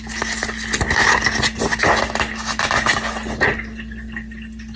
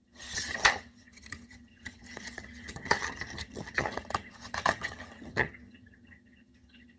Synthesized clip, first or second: second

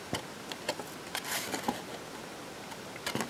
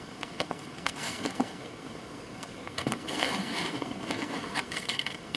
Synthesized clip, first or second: second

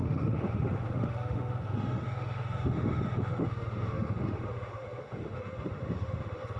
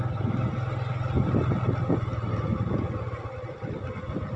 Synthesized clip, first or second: first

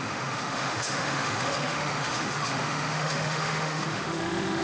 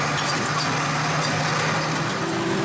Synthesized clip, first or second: first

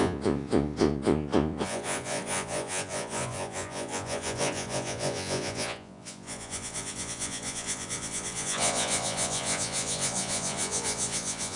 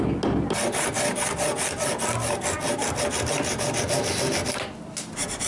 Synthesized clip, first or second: first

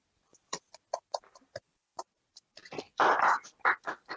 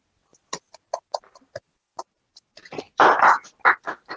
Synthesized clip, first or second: first